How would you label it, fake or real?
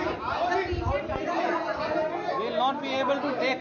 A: real